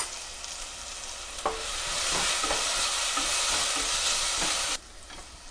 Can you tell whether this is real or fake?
real